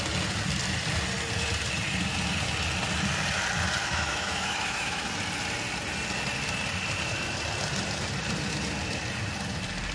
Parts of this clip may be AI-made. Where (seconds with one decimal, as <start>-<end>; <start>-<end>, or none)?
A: 3.8-5.1